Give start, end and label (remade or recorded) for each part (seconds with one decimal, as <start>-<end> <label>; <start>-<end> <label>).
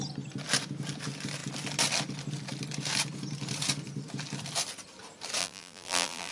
0.0-5.4 recorded; 5.4-6.3 remade